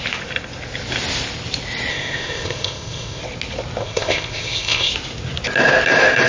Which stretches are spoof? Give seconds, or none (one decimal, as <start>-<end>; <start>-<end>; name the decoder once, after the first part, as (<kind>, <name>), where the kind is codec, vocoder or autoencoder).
1.9-3.2 (codec, ZipCodec); 3.8-4.9